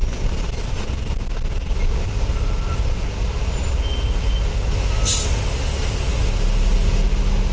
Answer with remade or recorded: recorded